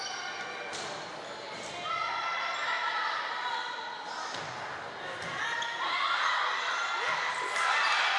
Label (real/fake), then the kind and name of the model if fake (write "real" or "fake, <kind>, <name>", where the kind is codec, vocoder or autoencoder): real